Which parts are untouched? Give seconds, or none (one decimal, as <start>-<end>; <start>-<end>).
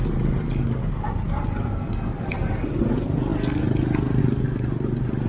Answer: 0.0-5.3